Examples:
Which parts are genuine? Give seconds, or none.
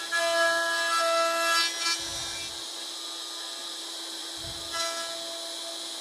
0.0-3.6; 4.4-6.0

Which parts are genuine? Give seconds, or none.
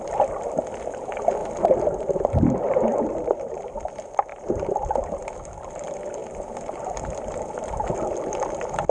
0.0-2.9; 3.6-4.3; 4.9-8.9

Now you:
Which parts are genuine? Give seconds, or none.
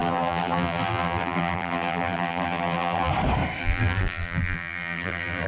3.1-3.6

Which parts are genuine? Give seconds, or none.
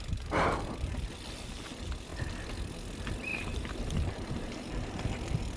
0.0-3.3; 4.9-5.6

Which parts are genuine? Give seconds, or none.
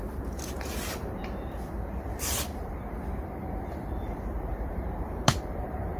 1.2-2.0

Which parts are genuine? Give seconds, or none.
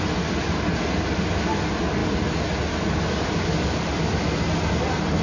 0.0-5.2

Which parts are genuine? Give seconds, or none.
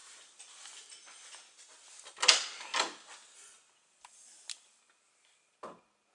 0.0-6.1